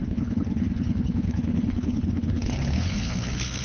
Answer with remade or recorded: remade